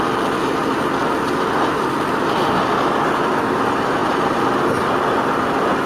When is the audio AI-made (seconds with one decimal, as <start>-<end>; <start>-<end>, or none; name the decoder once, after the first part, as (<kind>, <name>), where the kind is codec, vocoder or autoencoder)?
1.0-2.6 (vocoder, BigVGAN v2)